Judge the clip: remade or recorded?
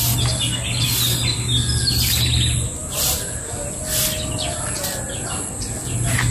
recorded